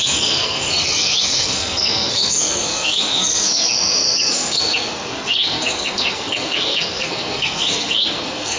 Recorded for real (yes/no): no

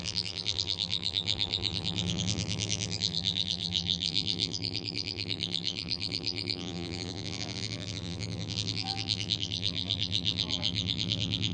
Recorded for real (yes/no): no